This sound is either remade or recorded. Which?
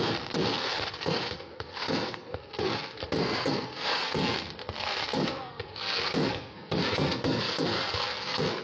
remade